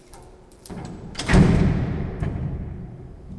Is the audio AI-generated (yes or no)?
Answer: yes